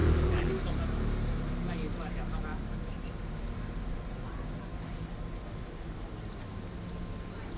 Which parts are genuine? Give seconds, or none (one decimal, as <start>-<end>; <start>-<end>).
0.5-7.6